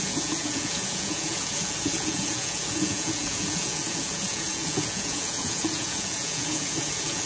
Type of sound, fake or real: fake